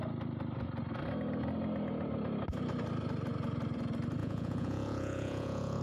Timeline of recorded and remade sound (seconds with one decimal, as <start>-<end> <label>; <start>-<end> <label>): 0.0-4.2 recorded; 4.2-5.8 remade